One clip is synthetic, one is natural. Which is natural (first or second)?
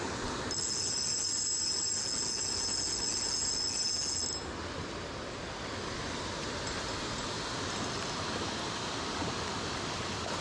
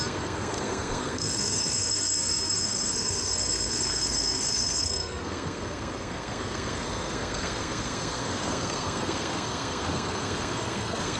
first